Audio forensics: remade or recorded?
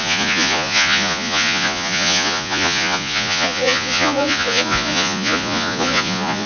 remade